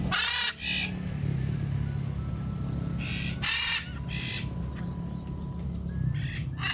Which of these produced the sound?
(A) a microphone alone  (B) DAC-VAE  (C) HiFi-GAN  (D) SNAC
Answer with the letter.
A